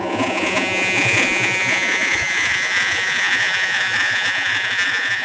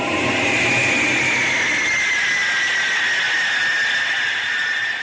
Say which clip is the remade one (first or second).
first